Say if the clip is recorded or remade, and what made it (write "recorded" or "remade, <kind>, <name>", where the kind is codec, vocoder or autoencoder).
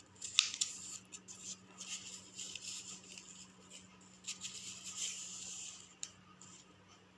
recorded